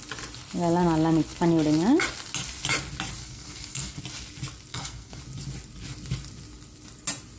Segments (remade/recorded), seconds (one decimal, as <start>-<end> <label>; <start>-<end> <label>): 0.0-3.2 recorded; 3.2-4.0 remade; 4.0-4.7 recorded; 4.7-5.2 remade; 5.2-7.4 recorded